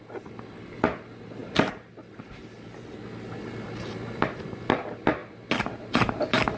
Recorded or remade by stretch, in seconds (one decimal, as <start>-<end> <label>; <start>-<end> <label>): 0.0-6.6 recorded